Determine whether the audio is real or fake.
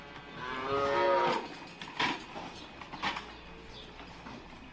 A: real